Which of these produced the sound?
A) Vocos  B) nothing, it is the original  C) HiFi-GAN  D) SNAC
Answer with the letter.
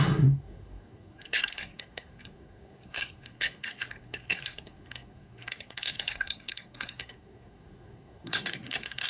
D